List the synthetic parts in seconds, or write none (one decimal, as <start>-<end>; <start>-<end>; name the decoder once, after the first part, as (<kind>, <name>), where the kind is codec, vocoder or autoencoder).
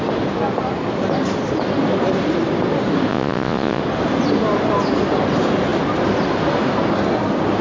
3.1-3.8 (vocoder, Vocos)